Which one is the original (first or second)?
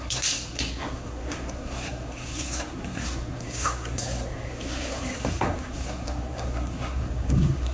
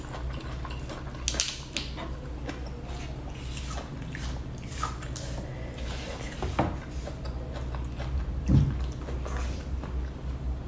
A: second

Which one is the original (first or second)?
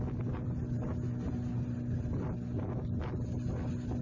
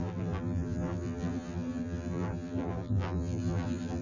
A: first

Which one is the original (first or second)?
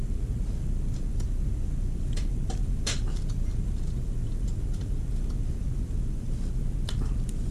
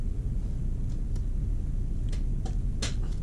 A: second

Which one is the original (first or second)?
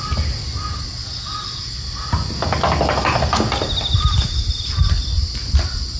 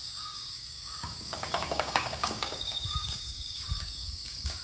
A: first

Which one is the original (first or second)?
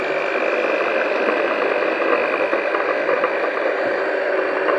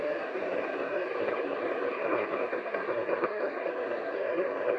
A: first